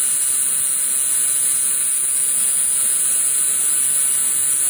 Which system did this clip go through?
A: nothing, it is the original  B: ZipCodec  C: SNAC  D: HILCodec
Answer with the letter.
A